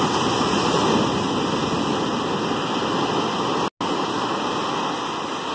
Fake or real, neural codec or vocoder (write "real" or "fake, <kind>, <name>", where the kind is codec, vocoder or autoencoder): real